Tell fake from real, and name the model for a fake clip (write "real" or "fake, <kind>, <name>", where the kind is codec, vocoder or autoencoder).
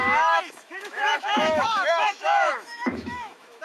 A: fake, autoencoder, DAC-VAE